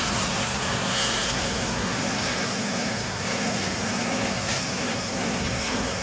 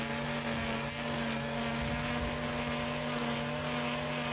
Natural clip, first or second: second